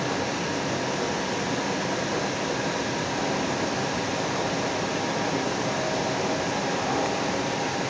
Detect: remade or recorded recorded